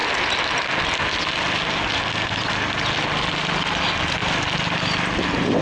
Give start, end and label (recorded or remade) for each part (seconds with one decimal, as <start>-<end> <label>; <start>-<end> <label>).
0.0-5.6 recorded